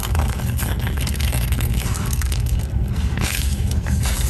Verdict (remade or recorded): remade